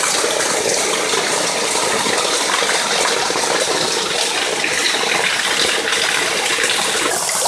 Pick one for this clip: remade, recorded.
recorded